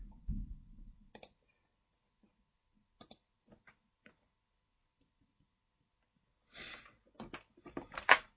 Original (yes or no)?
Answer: no